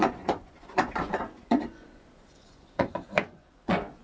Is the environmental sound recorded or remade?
remade